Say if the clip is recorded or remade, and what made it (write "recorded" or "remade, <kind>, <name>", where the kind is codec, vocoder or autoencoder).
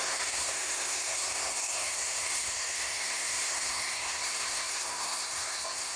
remade, codec, SNAC